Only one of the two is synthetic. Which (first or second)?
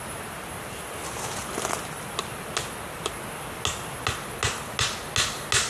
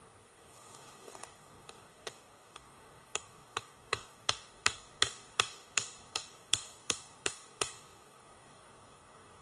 second